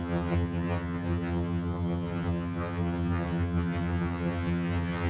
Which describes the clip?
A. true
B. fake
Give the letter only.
B